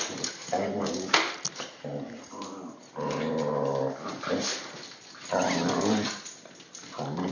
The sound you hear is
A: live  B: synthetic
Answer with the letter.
A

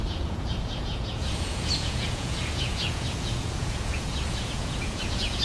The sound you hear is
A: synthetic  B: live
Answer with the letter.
A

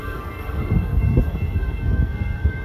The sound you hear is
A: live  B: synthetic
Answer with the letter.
B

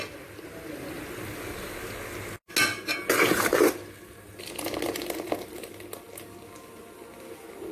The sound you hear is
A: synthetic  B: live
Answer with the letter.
B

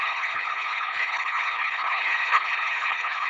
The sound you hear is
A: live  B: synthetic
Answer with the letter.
B